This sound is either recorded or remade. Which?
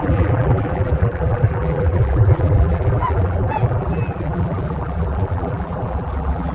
remade